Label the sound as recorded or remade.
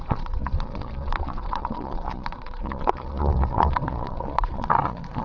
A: remade